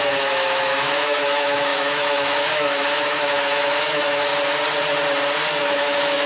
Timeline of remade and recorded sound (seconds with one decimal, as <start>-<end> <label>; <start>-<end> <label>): 0.0-4.3 remade; 4.3-5.6 recorded; 5.6-6.3 remade